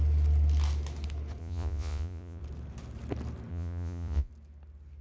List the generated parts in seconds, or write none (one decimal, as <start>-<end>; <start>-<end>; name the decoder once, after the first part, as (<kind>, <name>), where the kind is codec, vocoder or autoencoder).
1.4-2.4 (vocoder, Vocos); 3.5-4.3